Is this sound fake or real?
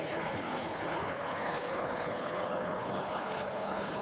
fake